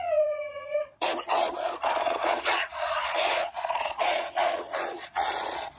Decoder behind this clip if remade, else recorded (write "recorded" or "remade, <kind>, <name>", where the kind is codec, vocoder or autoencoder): remade, vocoder, Vocos